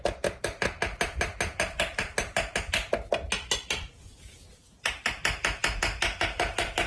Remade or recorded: recorded